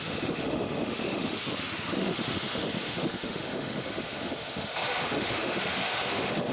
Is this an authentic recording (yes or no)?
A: no